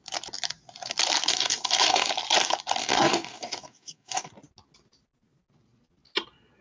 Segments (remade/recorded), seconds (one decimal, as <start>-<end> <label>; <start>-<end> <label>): 0.0-1.3 recorded; 1.3-2.1 remade; 2.1-2.8 recorded; 2.8-4.3 remade; 4.3-6.6 recorded